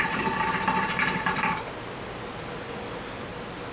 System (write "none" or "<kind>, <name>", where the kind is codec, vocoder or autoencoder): none